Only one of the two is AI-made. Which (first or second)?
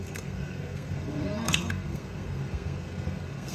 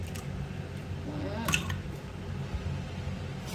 first